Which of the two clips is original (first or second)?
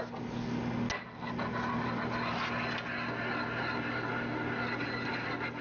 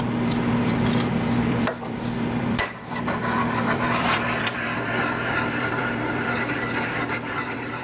first